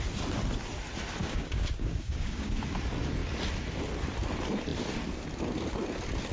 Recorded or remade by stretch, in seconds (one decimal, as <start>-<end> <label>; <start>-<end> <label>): 0.0-1.2 recorded; 1.2-2.6 remade; 2.6-6.3 recorded